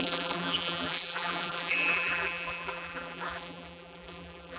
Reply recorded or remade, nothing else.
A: remade